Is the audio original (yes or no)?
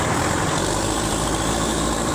no